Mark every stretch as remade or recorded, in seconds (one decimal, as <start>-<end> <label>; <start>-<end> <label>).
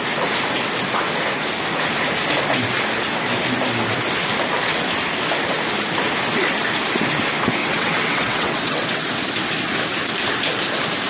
0.0-7.6 recorded; 7.6-9.1 remade; 9.1-11.1 recorded